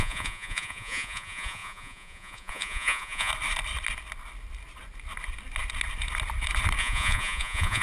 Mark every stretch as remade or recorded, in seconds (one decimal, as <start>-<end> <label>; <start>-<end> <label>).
0.0-3.3 remade; 3.3-6.8 recorded; 6.8-7.8 remade